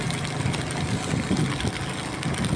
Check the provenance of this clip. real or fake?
real